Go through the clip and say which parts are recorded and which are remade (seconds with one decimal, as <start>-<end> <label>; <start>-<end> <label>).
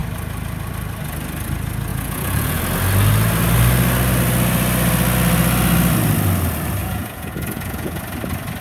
0.0-1.9 recorded; 1.9-2.6 remade; 2.6-6.8 recorded; 6.8-8.0 remade; 8.0-8.6 recorded